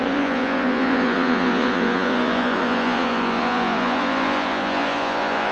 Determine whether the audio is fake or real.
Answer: fake